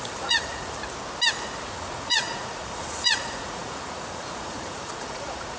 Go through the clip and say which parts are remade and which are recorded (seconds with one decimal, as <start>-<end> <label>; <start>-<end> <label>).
0.0-0.8 remade; 0.8-1.6 recorded; 1.6-5.6 remade